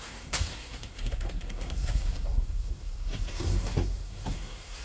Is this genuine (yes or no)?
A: no